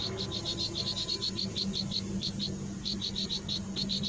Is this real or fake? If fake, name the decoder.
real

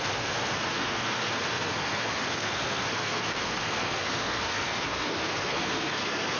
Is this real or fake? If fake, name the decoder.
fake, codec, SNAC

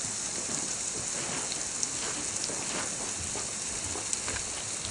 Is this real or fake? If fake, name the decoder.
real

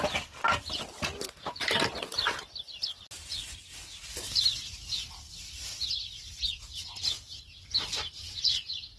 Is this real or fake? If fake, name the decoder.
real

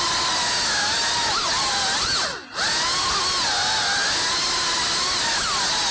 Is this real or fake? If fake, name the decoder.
real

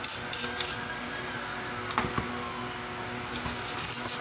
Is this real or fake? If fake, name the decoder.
real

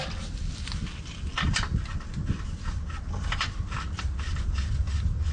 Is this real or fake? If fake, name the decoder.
real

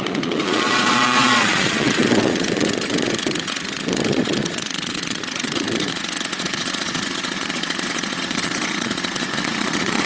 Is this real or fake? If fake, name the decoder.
fake, vocoder, Vocos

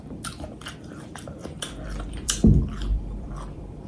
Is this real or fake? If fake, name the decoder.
fake, vocoder, BigVGAN v2